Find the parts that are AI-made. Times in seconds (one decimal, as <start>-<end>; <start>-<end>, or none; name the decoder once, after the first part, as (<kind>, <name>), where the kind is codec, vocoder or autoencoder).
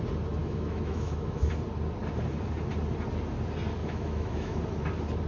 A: 0.4-1.5 (autoencoder, DAC-VAE); 3.8-4.6